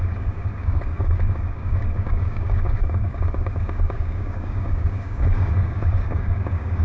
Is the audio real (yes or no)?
no